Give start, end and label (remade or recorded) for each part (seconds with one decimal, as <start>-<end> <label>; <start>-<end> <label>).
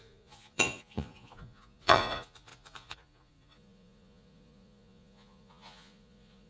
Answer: 0.0-6.5 remade